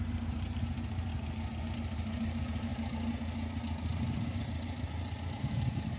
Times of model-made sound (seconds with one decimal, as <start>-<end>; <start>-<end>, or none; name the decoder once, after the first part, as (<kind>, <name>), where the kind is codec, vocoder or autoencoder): 0.0-1.1 (vocoder, BigVGAN v2); 1.6-2.7; 5.4-6.0